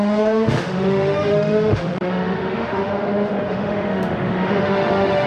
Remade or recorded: remade